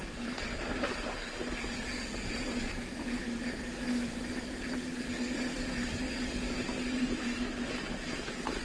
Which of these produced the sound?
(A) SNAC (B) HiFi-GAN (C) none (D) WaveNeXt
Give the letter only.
C